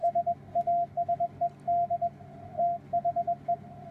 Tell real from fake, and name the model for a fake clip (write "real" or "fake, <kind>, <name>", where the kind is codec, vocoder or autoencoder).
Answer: real